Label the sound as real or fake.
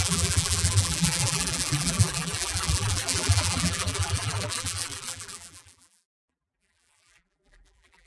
fake